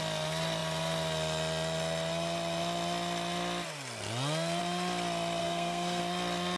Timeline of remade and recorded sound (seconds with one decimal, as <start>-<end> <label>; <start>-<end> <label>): 0.0-5.4 recorded; 5.4-6.0 remade; 6.0-6.6 recorded